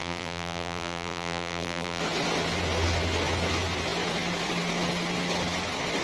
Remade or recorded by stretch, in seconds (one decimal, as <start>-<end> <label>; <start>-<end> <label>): 0.0-2.0 remade; 2.0-6.0 recorded

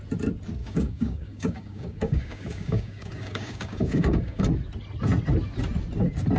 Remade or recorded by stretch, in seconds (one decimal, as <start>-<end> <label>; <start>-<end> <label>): 0.0-0.6 recorded; 0.6-4.4 remade; 4.4-6.4 recorded

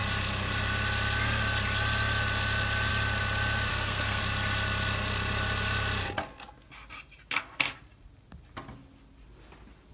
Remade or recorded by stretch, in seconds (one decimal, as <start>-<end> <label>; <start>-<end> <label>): 0.0-3.7 recorded; 3.7-4.2 remade; 4.2-9.9 recorded

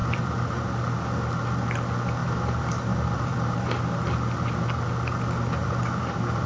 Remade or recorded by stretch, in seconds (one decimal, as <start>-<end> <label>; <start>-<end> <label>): 0.0-0.6 remade; 0.6-2.2 recorded; 2.2-3.6 remade; 3.6-5.6 recorded; 5.6-6.5 remade

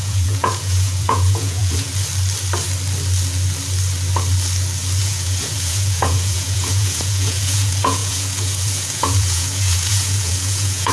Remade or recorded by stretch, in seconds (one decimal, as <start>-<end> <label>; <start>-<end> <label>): 0.0-1.9 remade; 1.9-5.0 recorded; 5.0-10.9 remade

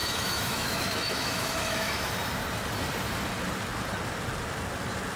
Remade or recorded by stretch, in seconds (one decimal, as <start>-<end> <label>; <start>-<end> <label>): 0.0-2.1 remade; 2.1-5.2 recorded

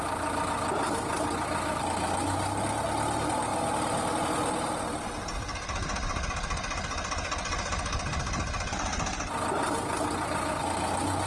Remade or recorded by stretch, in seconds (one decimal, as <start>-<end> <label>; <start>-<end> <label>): 0.0-11.3 recorded